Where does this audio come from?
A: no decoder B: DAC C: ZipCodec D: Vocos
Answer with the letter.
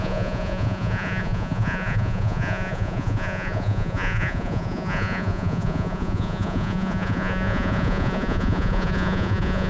D